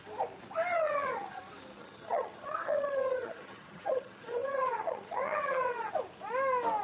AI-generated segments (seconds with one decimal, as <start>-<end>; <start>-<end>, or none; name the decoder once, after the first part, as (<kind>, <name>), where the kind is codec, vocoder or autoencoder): 0.7-1.4 (vocoder, HiFi-GAN); 1.8-5.9